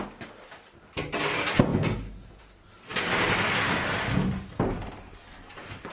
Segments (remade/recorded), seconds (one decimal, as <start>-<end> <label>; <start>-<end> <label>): 0.0-5.9 recorded